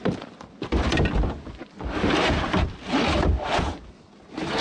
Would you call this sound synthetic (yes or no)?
no